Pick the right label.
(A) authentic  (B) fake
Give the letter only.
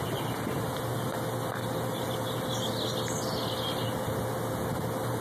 A